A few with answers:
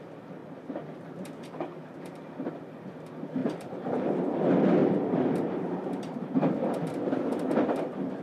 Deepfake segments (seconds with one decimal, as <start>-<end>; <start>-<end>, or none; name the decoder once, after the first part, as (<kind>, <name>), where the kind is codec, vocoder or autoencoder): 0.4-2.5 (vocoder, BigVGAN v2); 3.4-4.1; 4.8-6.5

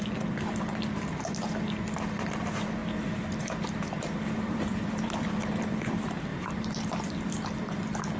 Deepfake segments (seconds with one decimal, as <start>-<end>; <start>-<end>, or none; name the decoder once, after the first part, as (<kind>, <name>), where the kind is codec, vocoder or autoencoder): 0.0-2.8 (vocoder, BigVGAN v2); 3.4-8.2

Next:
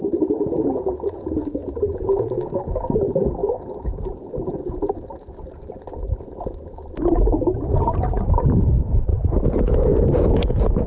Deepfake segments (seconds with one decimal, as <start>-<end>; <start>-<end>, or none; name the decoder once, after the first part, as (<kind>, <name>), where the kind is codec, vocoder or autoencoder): 0.0-9.1 (vocoder, BigVGAN v2); 10.0-10.9

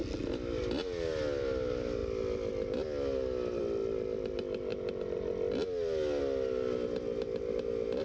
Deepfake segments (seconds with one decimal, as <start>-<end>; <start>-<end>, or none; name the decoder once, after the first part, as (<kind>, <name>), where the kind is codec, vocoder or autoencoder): none

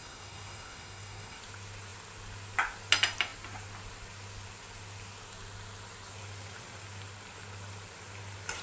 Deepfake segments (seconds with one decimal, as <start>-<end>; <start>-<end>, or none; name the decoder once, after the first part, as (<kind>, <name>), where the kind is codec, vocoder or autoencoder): 0.0-1.4 (codec, SNAC)

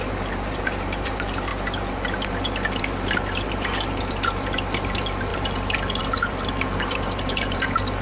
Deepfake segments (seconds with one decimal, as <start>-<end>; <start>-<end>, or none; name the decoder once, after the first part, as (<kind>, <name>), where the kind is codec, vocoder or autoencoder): 0.0-1.5 (vocoder, BigVGAN v2); 2.8-8.0

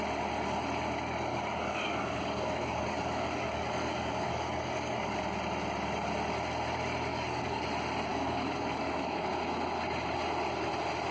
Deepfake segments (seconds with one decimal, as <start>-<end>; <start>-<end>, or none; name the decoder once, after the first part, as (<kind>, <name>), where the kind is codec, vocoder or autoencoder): 1.3-5.2 (codec, DAC); 7.1-7.6; 8.1-9.3

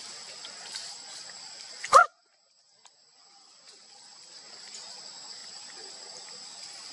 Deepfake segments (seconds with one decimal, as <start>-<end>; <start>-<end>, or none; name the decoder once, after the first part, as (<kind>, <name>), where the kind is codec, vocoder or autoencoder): none